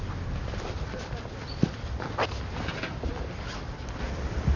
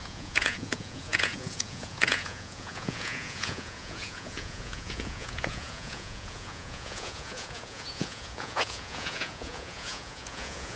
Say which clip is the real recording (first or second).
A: first